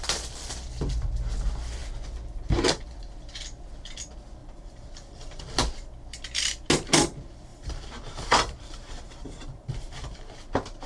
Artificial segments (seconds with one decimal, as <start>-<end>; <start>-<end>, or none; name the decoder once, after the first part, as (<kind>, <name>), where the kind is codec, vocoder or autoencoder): 4.4-5.4 (vocoder, BigVGAN v2); 7.5-10.3